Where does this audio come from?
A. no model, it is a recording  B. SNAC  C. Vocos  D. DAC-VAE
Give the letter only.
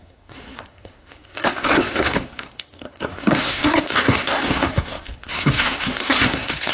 B